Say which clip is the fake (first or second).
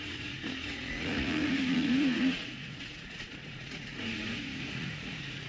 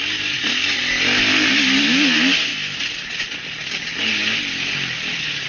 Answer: first